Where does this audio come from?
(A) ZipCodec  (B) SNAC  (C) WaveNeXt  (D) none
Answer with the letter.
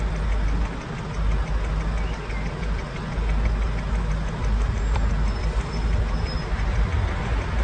D